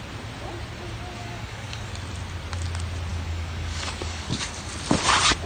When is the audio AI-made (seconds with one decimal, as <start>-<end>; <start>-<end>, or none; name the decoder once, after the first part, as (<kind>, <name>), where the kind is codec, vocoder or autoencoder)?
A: 1.2-1.9 (codec, DAC); 3.1-4.7